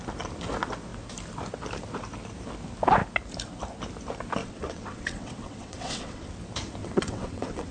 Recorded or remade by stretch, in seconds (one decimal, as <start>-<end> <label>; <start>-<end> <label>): 0.0-4.4 recorded; 4.4-6.3 remade; 6.3-6.8 recorded; 6.8-7.7 remade